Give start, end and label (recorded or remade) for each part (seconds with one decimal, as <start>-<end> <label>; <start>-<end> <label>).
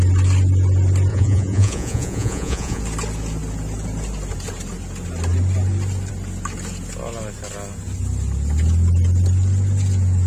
0.0-1.1 recorded; 1.1-2.8 remade; 2.8-10.3 recorded